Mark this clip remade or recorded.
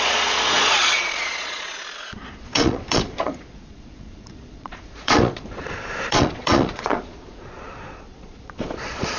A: remade